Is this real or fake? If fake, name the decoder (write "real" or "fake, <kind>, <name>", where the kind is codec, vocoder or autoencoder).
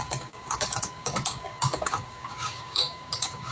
fake, codec, DAC